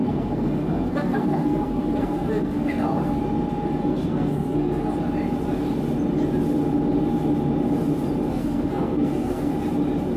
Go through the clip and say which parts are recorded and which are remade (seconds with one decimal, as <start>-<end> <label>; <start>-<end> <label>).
0.0-3.2 remade; 3.2-3.8 recorded; 3.8-4.9 remade; 4.9-8.3 recorded; 8.3-9.5 remade; 9.5-10.2 recorded